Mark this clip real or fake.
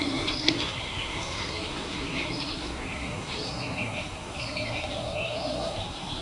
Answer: fake